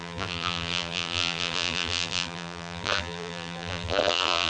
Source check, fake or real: fake